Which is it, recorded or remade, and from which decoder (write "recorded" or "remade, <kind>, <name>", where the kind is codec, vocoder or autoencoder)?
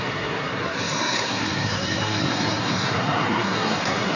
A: remade, codec, SNAC